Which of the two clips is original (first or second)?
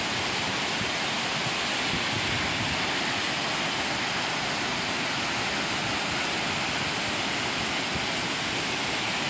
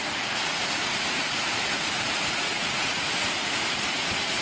first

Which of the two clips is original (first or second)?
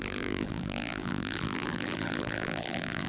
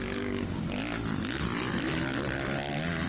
second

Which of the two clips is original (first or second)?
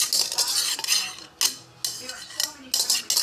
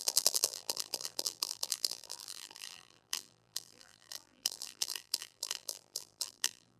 first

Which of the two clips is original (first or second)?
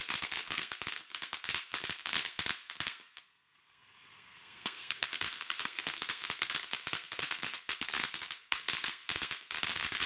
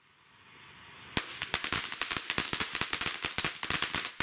second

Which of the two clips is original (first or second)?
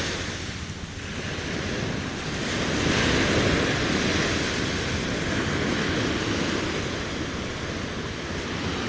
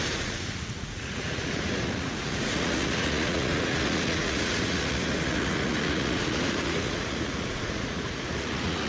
first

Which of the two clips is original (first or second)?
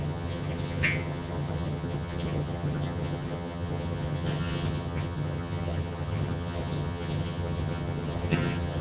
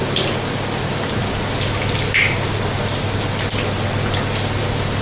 second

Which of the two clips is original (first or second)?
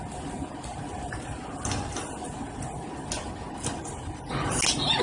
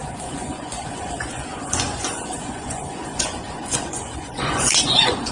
first